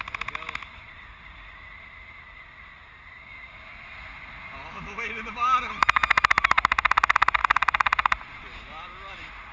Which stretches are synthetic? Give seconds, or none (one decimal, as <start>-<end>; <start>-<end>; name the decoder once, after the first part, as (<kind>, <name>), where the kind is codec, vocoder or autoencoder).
none